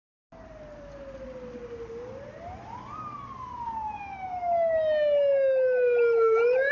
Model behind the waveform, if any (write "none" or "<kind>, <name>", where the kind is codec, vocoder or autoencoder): none